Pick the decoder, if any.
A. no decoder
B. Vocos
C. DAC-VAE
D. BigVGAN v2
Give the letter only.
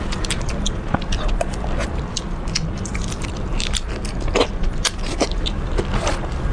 A